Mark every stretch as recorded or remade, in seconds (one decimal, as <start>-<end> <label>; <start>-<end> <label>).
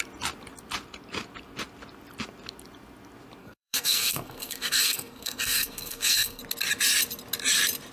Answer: 0.0-3.4 recorded; 3.4-6.4 remade; 6.4-7.9 recorded